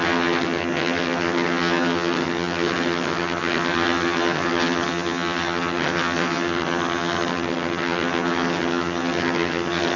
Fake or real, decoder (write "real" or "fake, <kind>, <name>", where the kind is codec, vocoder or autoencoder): fake, vocoder, HiFi-GAN